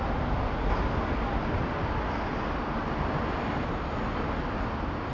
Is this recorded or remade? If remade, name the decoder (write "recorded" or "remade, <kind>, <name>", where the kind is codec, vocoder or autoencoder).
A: recorded